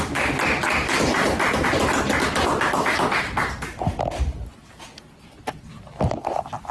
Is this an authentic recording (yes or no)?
yes